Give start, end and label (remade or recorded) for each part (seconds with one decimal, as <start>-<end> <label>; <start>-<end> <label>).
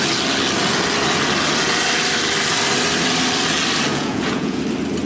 0.0-3.9 recorded; 3.9-4.6 remade; 4.6-5.1 recorded